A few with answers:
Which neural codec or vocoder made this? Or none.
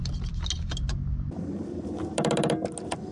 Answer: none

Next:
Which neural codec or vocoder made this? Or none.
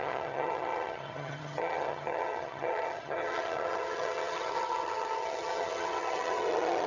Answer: vocoder, HiFi-GAN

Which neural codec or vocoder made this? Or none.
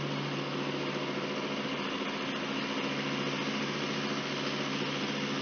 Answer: none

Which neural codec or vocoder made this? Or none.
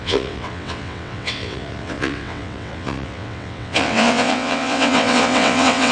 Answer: vocoder, WaveNeXt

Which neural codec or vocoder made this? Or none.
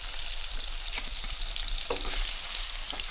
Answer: vocoder, BigVGAN v2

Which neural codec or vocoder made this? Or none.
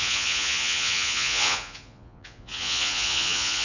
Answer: vocoder, Vocos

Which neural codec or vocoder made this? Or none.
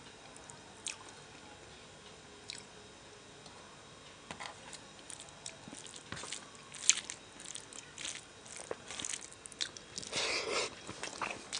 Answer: none